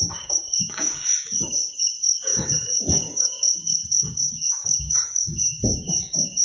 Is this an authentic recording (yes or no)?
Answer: no